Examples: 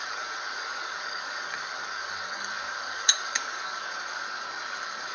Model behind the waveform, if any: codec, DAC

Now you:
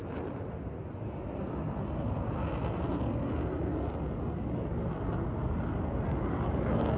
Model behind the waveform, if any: none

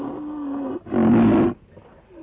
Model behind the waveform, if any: none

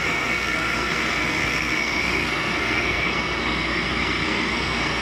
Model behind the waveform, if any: codec, SNAC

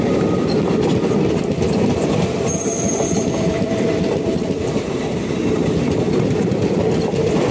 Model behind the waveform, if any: none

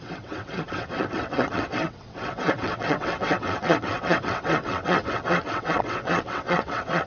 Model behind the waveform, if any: vocoder, WaveNeXt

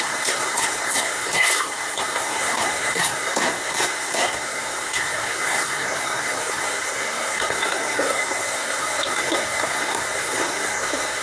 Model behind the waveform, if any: codec, SNAC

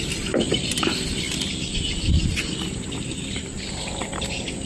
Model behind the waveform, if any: none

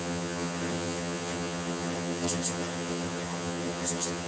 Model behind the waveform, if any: vocoder, HiFi-GAN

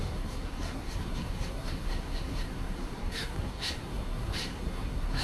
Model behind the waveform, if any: codec, SNAC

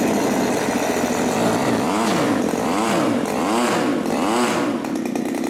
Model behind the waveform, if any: none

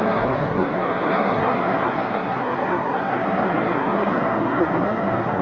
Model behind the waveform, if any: codec, SNAC